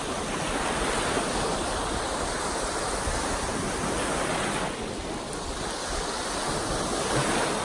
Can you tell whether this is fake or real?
real